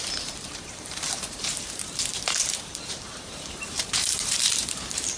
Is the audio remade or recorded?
remade